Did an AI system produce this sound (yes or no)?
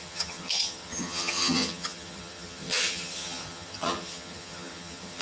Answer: yes